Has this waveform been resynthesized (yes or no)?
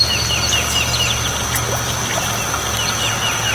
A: no